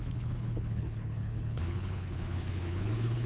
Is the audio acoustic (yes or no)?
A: no